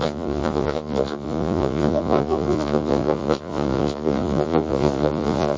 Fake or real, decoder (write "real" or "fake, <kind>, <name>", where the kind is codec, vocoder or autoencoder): fake, vocoder, Vocos